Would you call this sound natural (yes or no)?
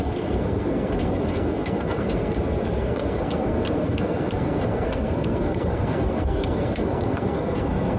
no